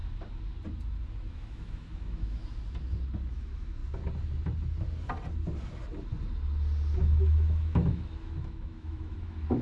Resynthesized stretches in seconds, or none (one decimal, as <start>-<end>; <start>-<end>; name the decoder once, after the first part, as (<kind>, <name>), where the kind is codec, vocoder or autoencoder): 1.3-2.4 (autoencoder, DAC-VAE); 3.3-3.8; 7.0-9.6